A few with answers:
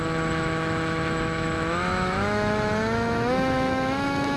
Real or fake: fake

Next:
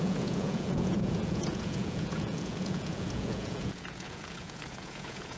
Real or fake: fake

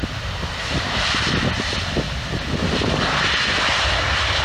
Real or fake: real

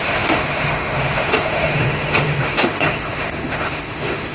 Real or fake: fake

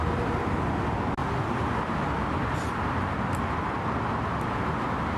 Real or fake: real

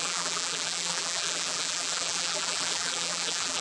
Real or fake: fake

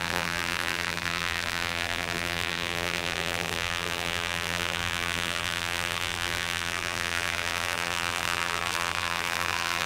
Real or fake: fake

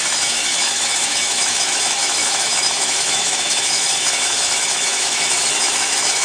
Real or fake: fake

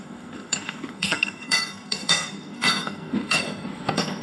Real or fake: fake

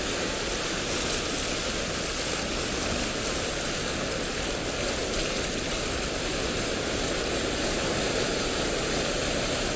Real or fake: real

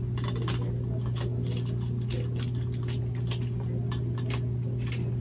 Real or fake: real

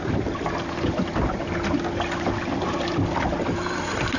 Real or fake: real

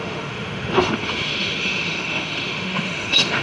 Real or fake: fake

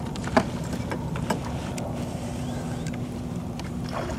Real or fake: real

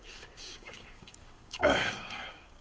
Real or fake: fake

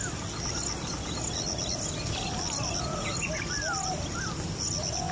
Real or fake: real